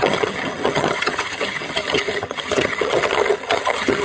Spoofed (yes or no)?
yes